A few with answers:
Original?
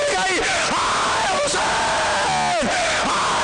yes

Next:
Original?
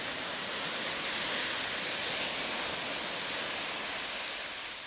yes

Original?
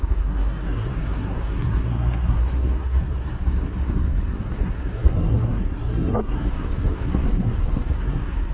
no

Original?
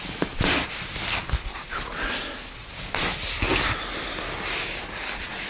yes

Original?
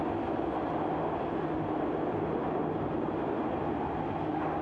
yes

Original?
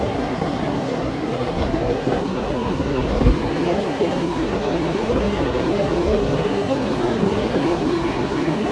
no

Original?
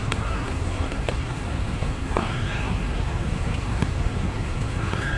no